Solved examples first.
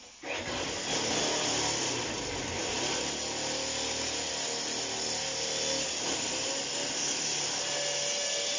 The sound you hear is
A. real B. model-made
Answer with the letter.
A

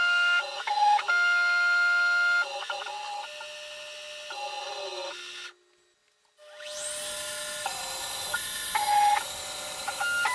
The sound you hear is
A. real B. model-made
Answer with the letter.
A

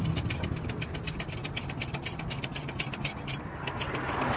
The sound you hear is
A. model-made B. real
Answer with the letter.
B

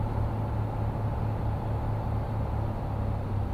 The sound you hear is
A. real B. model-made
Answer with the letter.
A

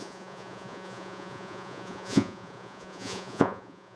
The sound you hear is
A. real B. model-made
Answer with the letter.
B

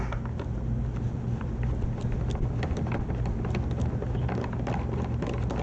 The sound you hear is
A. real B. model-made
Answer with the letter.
A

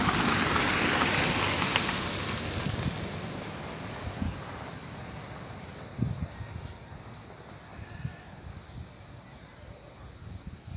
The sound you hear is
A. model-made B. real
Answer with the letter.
B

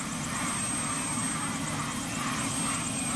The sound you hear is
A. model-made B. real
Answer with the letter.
B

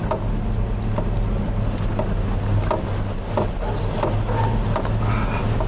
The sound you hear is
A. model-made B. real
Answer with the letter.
B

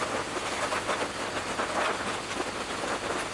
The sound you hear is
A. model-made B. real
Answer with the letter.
B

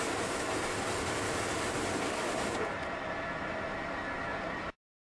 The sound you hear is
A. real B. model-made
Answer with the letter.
B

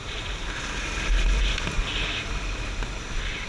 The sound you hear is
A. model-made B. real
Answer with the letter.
B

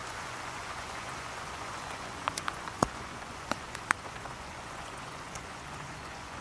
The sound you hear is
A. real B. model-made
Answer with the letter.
B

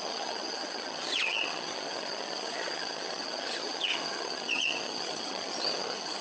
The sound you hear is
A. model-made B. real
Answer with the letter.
A